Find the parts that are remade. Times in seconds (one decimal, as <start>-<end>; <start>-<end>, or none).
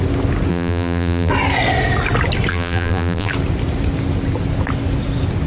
0.5-1.3; 2.5-3.3